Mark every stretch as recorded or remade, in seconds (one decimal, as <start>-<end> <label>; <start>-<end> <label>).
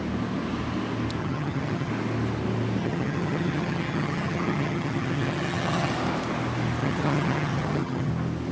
0.0-1.2 recorded; 1.2-1.9 remade; 1.9-2.8 recorded; 2.8-5.9 remade; 5.9-6.8 recorded; 6.8-8.1 remade; 8.1-8.5 recorded